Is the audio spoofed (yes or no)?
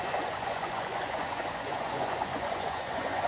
yes